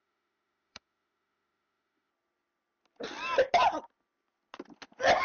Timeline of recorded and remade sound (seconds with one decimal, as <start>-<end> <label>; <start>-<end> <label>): 0.0-2.1 remade; 2.1-5.2 recorded